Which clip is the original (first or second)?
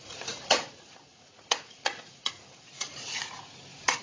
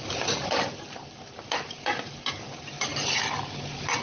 second